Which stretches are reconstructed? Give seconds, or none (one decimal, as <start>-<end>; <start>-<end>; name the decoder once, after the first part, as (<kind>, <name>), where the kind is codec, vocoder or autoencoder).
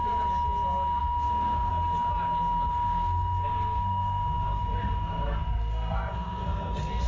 1.0-1.7 (codec, SNAC); 2.7-7.1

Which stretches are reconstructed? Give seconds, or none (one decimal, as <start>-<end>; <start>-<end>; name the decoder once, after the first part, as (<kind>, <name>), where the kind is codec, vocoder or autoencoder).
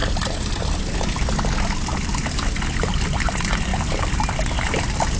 none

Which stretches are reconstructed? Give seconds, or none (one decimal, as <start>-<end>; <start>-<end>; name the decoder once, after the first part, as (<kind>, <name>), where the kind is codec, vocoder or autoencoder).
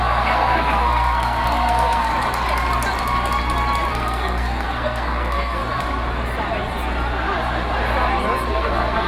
0.0-2.1 (codec, SNAC); 3.9-5.6; 8.5-9.1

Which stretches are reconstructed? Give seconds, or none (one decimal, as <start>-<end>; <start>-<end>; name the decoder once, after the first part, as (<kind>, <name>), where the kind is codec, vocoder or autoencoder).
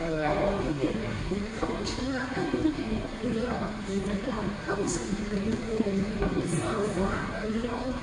0.0-8.0 (codec, SNAC)